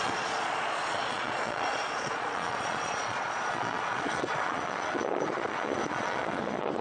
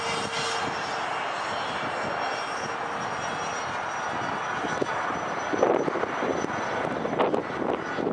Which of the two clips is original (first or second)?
second